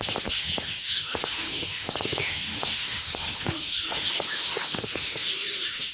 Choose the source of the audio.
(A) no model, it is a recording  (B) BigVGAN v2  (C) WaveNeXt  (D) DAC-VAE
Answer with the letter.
D